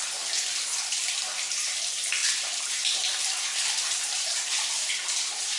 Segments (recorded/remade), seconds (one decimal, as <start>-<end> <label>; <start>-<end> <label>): 0.0-2.2 recorded; 2.2-4.9 remade; 4.9-5.6 recorded